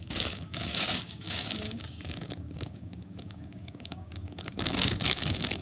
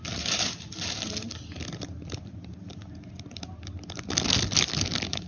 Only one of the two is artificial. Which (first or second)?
first